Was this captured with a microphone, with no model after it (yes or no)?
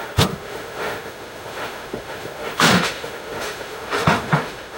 no